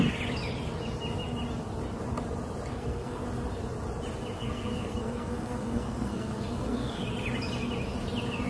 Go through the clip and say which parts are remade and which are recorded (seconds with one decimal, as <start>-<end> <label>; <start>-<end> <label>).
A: 0.0-2.7 recorded; 2.7-3.2 remade; 3.2-4.4 recorded; 4.4-7.0 remade; 7.0-8.5 recorded